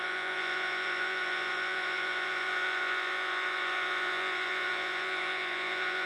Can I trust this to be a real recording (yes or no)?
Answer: no